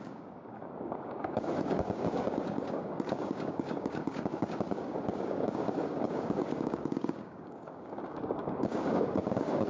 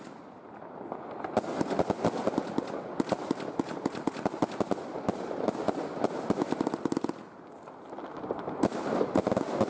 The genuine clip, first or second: second